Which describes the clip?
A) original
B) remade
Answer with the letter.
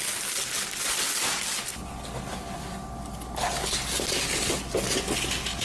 A